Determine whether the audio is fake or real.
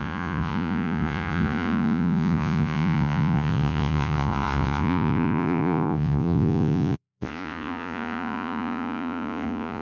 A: fake